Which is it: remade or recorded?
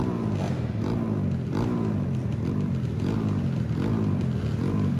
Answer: recorded